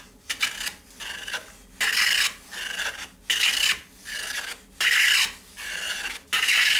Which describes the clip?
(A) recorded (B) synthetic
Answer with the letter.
A